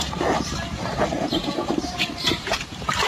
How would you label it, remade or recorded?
remade